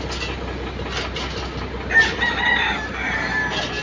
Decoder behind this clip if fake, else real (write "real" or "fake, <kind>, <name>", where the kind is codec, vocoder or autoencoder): real